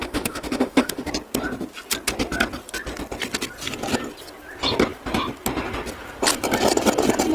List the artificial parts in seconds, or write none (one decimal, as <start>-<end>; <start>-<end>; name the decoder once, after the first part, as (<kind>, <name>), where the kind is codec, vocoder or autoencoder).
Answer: 0.0-1.1 (autoencoder, DAC-VAE)